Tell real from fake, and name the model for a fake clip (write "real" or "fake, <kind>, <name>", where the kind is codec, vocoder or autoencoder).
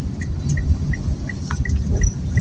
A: real